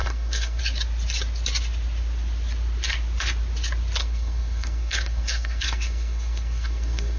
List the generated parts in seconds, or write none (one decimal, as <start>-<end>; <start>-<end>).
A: 0.0-0.6; 4.0-7.2